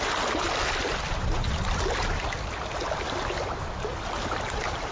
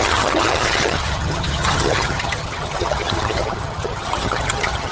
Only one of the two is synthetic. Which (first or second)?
second